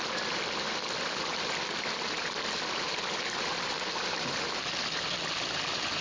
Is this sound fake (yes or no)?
no